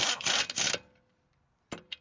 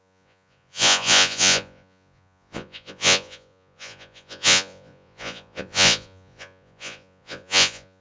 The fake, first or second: second